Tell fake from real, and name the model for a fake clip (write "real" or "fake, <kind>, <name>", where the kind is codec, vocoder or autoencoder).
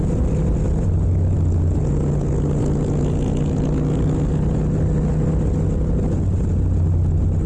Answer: real